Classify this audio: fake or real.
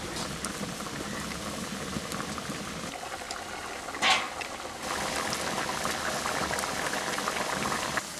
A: real